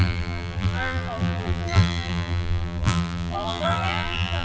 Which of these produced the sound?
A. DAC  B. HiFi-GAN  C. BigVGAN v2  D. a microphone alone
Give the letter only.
C